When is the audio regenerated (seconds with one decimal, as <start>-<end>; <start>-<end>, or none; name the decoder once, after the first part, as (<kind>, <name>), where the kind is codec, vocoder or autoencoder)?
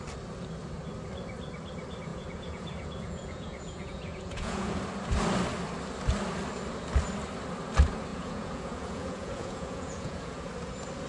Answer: 2.1-4.8 (vocoder, Vocos); 8.1-10.5